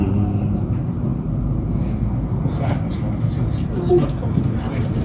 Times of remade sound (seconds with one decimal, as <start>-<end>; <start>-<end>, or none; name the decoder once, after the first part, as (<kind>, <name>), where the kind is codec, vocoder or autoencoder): none